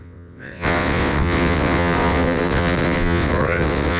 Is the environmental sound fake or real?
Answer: fake